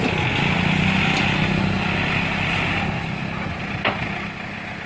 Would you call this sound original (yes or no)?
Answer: yes